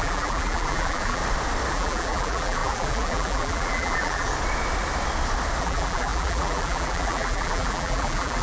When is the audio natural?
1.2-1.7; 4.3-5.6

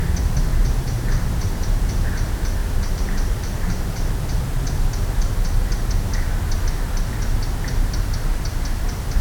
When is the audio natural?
0.0-0.5; 1.8-2.6; 3.8-9.2

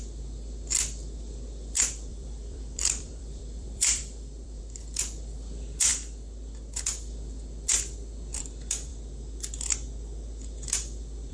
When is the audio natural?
0.0-2.1; 4.6-11.3

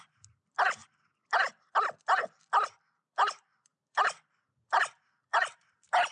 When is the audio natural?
none

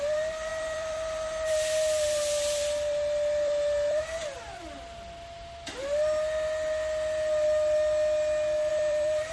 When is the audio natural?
4.0-8.7